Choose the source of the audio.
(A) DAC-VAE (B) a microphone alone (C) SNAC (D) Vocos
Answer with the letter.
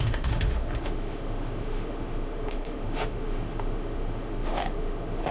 A